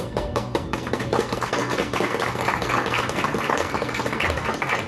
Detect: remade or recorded remade